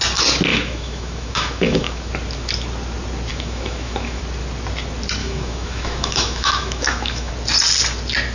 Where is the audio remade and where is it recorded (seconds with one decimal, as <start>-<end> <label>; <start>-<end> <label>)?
0.0-0.5 recorded; 0.5-2.1 remade; 2.1-3.3 recorded; 3.3-4.2 remade; 4.2-5.2 recorded; 5.2-7.3 remade; 7.3-8.3 recorded